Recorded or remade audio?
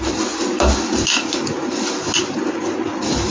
recorded